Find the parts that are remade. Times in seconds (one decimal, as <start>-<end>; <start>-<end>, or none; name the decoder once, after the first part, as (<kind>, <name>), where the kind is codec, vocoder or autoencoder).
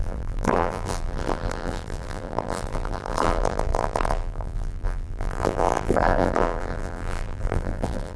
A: 0.0-8.2 (vocoder, BigVGAN v2)